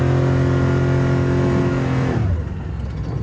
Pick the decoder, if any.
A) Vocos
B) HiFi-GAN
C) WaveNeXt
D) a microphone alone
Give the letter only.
D